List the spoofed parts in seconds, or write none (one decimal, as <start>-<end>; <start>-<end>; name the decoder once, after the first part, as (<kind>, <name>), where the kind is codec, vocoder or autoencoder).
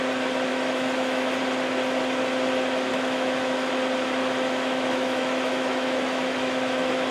0.5-1.4 (autoencoder, DAC-VAE); 2.9-3.7; 4.2-7.1